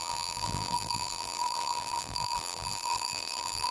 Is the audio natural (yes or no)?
no